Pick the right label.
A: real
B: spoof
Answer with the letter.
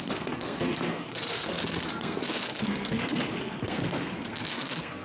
B